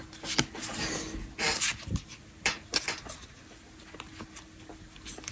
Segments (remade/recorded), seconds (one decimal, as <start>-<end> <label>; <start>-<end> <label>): 0.0-5.3 recorded